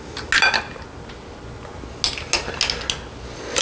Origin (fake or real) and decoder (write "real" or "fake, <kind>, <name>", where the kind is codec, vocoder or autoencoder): real